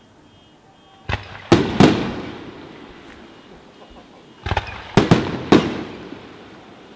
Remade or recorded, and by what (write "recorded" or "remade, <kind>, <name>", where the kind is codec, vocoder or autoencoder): recorded